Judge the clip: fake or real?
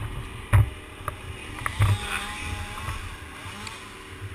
real